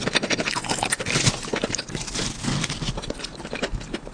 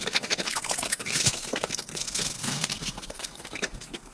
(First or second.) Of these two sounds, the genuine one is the first